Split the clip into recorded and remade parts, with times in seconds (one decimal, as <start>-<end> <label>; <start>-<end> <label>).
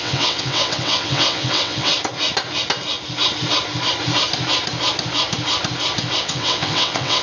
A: 0.0-1.9 remade; 1.9-6.2 recorded; 6.2-7.2 remade